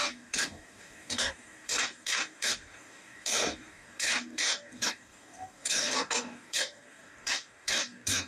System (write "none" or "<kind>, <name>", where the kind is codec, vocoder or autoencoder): codec, DAC